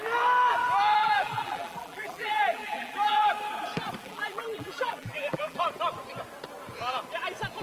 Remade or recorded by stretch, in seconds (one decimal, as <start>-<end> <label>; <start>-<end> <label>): 0.0-1.0 recorded; 1.0-3.3 remade; 3.3-4.0 recorded; 4.0-5.6 remade; 5.6-7.6 recorded